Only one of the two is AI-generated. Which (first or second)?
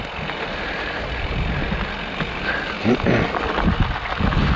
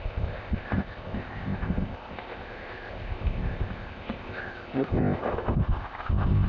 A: second